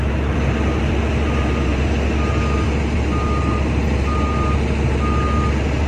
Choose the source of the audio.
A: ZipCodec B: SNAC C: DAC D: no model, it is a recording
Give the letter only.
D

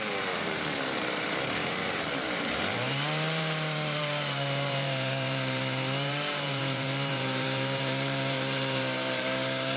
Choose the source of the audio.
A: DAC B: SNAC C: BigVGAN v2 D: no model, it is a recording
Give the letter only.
C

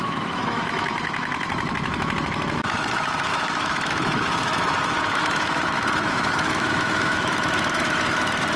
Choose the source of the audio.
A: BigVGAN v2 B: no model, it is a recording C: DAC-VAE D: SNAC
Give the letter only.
C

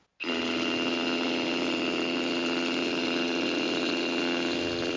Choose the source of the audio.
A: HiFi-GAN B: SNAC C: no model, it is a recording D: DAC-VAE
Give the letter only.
C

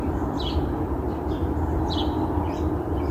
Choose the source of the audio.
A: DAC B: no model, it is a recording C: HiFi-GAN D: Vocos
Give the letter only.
B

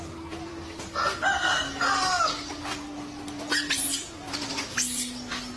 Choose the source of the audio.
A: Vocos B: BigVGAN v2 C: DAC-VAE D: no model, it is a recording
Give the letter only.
D